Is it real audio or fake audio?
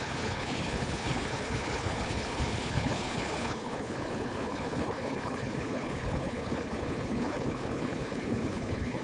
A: fake